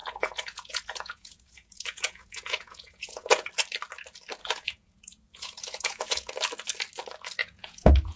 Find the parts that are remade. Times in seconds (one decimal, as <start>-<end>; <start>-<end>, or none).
0.0-3.5; 4.4-6.3; 7.4-8.2